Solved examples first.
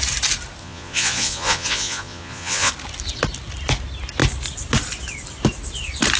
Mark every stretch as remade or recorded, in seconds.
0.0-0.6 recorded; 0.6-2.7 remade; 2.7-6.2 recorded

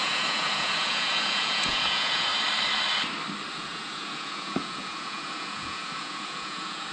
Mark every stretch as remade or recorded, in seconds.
0.0-2.3 remade; 2.3-3.5 recorded; 3.5-6.9 remade

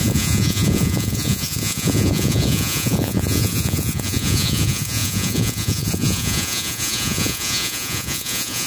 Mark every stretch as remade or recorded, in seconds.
0.0-8.7 remade

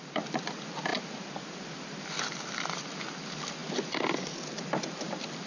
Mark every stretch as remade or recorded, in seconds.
0.0-5.5 recorded